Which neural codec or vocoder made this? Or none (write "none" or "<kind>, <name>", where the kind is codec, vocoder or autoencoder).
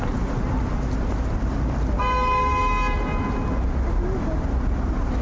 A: none